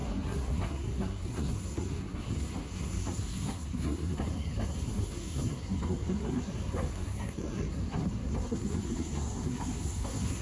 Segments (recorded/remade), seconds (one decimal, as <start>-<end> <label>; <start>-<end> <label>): 0.0-10.4 remade

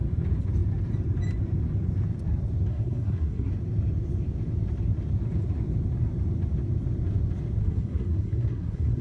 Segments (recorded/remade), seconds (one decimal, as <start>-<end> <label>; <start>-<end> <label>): 0.0-2.7 recorded; 2.7-3.5 remade; 3.5-7.6 recorded; 7.6-9.0 remade

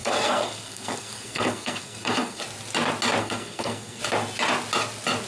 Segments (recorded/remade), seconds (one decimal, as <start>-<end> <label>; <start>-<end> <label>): 0.0-2.4 remade; 2.4-3.2 recorded; 3.2-4.0 remade; 4.0-5.3 recorded